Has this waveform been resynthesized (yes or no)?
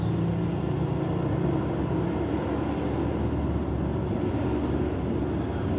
no